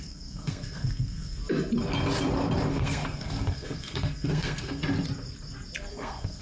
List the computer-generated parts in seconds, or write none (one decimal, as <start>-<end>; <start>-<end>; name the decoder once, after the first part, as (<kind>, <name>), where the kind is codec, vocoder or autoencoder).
0.0-1.4 (codec, SNAC); 2.7-4.8; 5.9-6.4